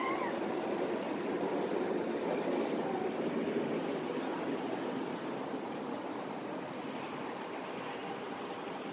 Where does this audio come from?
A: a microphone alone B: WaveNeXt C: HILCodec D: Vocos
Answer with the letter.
A